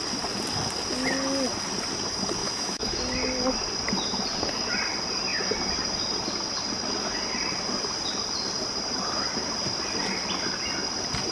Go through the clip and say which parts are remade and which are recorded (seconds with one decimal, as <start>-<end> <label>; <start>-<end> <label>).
0.0-2.4 recorded; 2.4-3.0 remade; 3.0-11.3 recorded